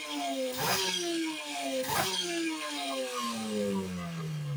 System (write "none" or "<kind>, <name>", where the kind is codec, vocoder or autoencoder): codec, SNAC